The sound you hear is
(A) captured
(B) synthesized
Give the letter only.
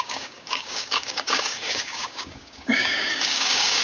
B